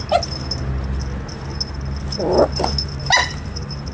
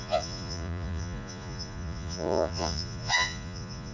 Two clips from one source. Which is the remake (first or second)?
second